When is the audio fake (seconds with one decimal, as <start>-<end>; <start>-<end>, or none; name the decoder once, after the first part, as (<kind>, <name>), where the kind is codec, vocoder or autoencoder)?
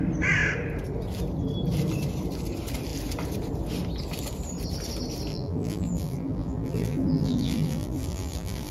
5.3-8.7 (vocoder, BigVGAN v2)